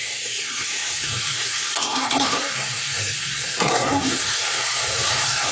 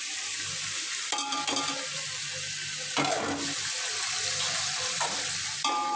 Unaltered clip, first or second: second